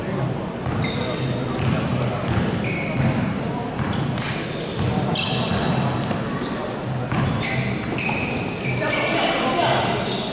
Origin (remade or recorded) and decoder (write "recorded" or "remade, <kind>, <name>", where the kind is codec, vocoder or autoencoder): recorded